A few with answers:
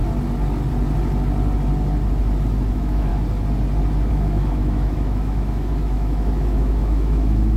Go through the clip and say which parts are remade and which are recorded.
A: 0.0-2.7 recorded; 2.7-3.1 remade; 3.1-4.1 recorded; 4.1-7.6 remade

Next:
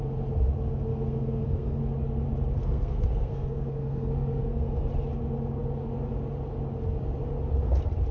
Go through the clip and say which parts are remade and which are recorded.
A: 0.0-0.9 recorded; 0.9-1.8 remade; 1.8-2.6 recorded; 2.6-4.9 remade; 4.9-8.1 recorded

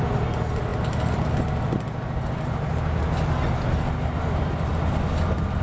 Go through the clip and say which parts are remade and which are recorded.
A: 0.0-5.6 recorded

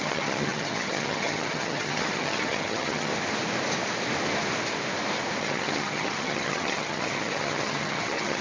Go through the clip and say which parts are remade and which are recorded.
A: 0.0-3.1 remade; 3.1-5.4 recorded; 5.4-8.4 remade

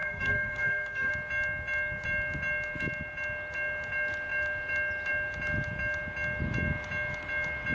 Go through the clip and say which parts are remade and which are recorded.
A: 0.0-1.1 remade; 1.1-7.7 recorded

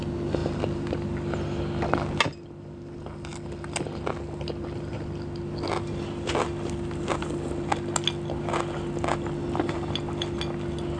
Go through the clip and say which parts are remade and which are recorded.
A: 0.0-11.0 recorded

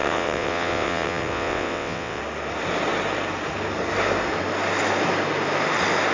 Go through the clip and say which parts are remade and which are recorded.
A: 0.0-2.2 remade; 2.2-6.1 recorded

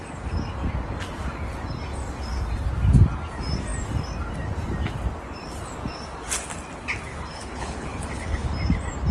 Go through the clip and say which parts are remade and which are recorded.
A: 0.0-7.1 recorded; 7.1-8.5 remade; 8.5-9.1 recorded